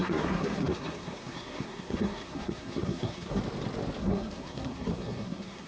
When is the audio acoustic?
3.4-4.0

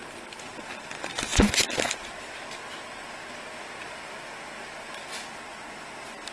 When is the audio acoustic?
0.0-6.3

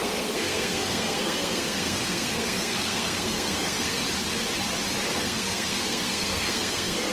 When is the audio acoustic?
4.0-5.1

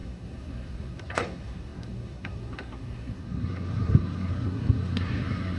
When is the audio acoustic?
none

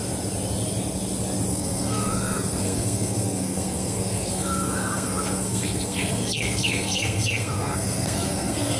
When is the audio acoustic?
0.0-1.5

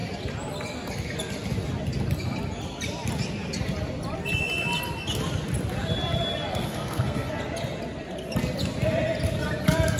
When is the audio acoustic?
0.0-6.5; 7.3-10.0

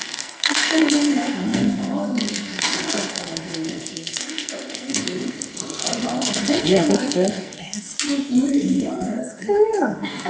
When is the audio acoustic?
7.9-8.5

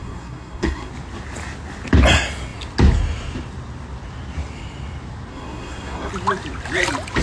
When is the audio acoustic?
0.9-5.3; 6.1-7.2